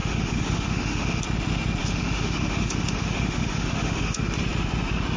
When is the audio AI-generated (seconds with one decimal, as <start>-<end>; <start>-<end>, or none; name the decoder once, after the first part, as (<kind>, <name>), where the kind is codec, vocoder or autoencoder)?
0.0-1.2 (autoencoder, DAC-VAE); 1.8-4.2